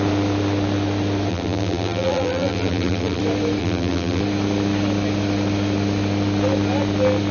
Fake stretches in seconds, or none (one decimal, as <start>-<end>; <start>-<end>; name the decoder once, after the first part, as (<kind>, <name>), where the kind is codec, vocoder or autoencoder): 1.3-3.2 (vocoder, BigVGAN v2); 3.6-4.2